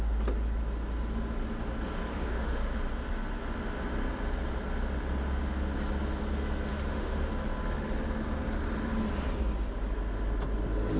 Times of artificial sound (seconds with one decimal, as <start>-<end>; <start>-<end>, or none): 2.1-2.7; 6.7-7.3